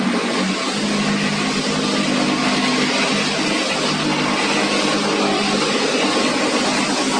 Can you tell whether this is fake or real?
real